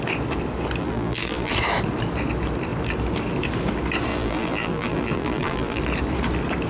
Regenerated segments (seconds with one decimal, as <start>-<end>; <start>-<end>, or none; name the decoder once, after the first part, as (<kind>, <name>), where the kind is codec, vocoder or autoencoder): 0.8-1.5 (vocoder, BigVGAN v2); 4.1-5.8